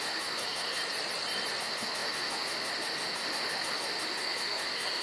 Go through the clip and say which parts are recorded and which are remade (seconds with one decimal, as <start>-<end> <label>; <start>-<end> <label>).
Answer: 0.0-0.8 remade; 0.8-1.6 recorded; 1.6-5.0 remade